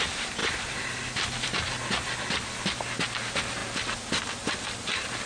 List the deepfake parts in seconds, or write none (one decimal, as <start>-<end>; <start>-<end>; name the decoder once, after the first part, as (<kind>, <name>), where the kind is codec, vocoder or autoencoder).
0.4-2.8 (vocoder, BigVGAN v2)